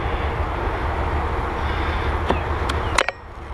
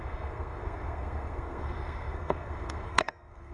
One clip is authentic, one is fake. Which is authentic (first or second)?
first